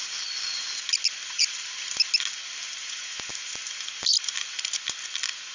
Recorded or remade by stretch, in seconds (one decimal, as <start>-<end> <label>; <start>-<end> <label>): 0.0-2.8 recorded; 2.8-3.3 remade; 3.3-5.5 recorded